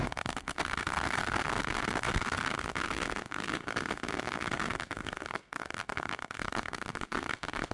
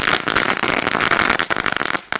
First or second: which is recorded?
second